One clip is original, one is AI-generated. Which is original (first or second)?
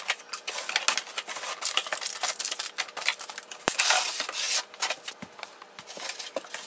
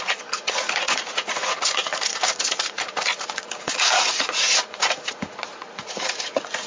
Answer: first